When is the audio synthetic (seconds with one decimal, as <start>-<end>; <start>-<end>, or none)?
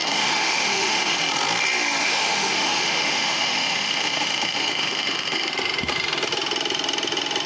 0.0-1.2; 2.0-5.5